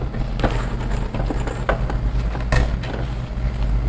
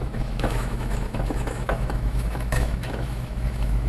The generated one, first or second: second